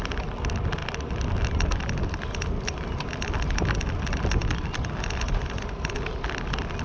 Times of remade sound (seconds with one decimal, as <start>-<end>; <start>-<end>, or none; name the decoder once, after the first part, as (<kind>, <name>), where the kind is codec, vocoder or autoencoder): none